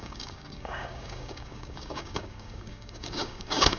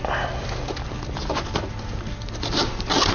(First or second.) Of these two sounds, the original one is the second